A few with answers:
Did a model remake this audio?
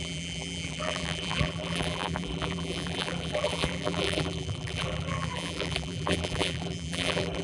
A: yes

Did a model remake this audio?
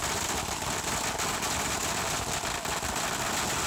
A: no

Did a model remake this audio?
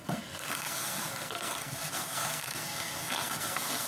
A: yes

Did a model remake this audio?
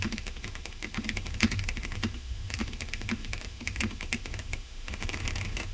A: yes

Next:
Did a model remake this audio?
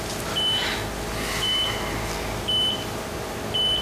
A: no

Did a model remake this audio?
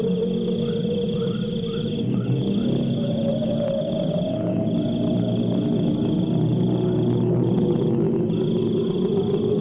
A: no